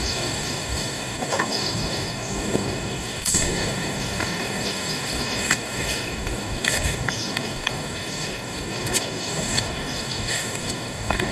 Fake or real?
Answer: fake